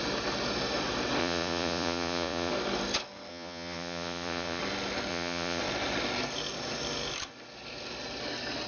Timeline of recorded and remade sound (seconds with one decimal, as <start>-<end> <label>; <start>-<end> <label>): 0.0-1.2 recorded; 1.2-2.5 remade; 2.5-3.3 recorded; 3.3-4.6 remade; 4.6-5.1 recorded; 5.1-5.6 remade; 5.6-8.7 recorded